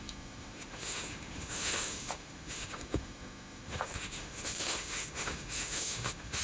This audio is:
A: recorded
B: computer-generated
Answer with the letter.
B